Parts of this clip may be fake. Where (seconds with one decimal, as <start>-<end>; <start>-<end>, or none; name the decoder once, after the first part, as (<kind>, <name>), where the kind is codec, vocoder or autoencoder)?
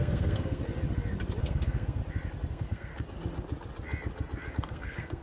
0.0-0.6 (codec, SNAC); 1.4-2.0; 2.5-2.9; 4.5-5.2